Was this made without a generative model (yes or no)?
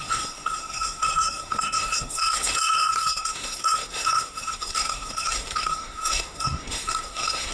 no